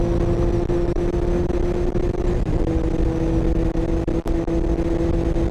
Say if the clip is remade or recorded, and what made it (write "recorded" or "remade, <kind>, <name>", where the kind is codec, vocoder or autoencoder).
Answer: recorded